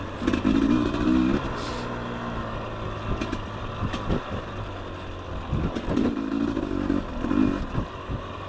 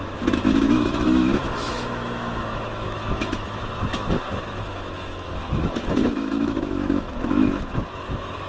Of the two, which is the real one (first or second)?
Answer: first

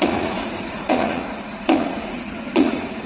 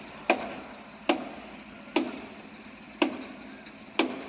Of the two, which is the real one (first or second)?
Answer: second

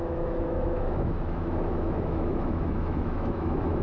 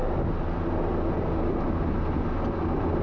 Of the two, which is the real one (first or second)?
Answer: second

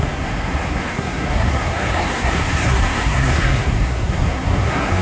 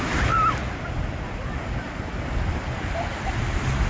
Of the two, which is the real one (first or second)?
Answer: second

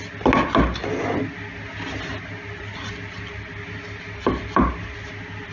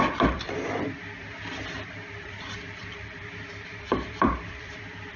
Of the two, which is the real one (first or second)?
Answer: first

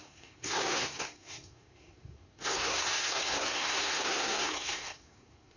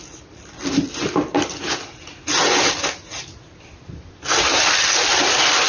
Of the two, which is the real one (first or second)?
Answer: second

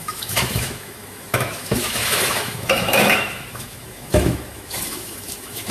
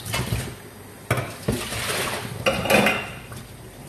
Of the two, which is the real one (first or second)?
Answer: second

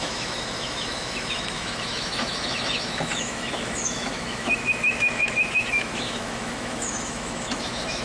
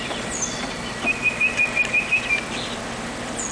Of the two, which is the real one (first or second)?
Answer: second